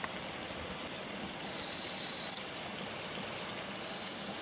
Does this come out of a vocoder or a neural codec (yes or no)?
no